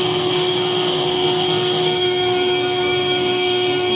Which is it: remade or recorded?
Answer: remade